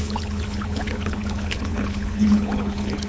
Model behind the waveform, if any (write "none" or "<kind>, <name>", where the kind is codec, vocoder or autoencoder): codec, HILCodec